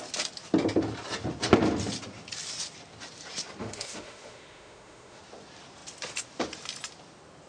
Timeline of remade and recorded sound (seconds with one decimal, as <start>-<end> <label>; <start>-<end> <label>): 0.0-3.6 recorded; 3.6-5.2 remade; 5.2-7.5 recorded